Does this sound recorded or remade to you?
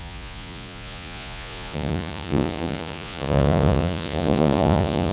remade